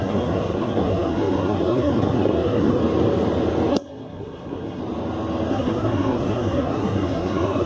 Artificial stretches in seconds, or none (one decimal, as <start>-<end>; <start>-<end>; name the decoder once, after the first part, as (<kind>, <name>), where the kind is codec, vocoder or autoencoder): 0.0-2.8 (codec, SNAC); 3.7-4.8; 5.5-7.7